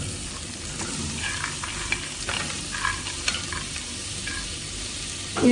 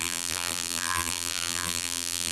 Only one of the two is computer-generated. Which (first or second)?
second